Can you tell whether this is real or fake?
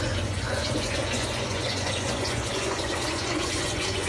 fake